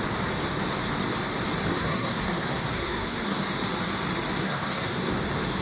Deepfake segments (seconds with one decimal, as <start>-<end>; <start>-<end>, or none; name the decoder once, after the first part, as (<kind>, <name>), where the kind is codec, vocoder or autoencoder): 1.7-3.4 (codec, SNAC); 4.4-5.1